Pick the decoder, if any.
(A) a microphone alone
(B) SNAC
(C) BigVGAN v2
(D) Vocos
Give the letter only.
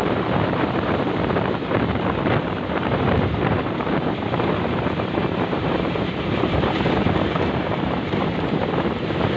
C